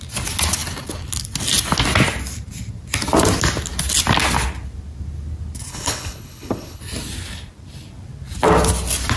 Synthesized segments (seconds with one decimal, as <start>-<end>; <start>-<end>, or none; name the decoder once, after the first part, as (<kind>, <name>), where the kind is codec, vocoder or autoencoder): 5.7-6.8 (codec, HILCodec)